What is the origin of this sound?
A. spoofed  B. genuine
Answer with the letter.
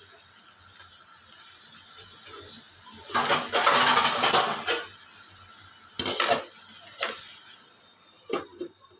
B